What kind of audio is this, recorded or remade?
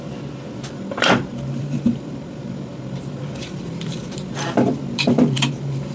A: remade